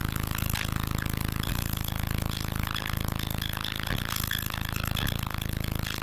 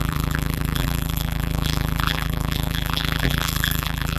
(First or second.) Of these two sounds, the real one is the first